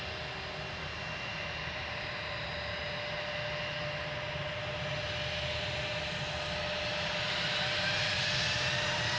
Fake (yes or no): no